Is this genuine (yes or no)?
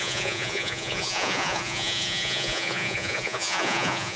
no